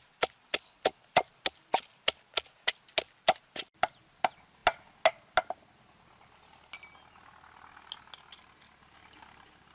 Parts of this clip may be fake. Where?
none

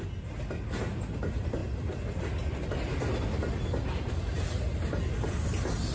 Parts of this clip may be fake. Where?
none

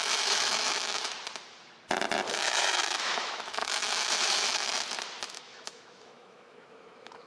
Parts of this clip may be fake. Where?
0.0-1.1 (autoencoder, DAC-VAE); 2.3-4.6; 5.3-7.3

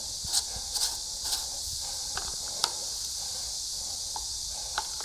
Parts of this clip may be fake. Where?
none

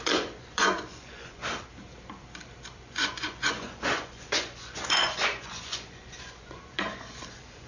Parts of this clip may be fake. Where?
0.0-1.4 (vocoder, Vocos); 2.8-7.7